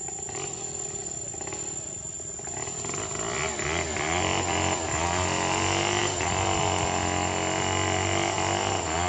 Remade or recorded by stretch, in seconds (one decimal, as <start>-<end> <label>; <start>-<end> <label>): 0.0-9.1 recorded